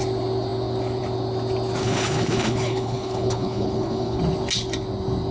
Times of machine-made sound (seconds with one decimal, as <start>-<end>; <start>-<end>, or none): 1.8-4.2